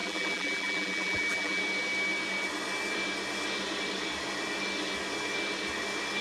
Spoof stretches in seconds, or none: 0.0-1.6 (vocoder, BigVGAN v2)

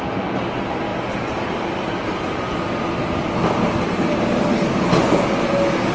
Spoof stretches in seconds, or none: 0.9-2.5 (vocoder, BigVGAN v2)

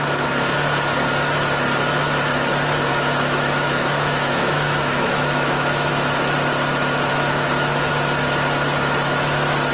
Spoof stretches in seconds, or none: 2.9-5.9 (autoencoder, DAC-VAE); 7.1-7.9

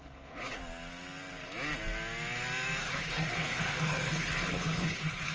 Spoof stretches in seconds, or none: 0.0-0.6 (codec, HILCodec); 2.8-5.3

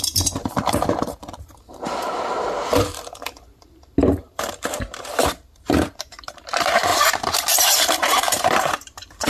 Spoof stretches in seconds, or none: 0.0-6.9 (vocoder, BigVGAN v2); 7.5-9.3

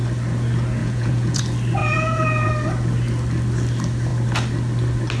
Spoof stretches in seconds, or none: 0.8-1.4 (vocoder, Vocos); 1.8-2.5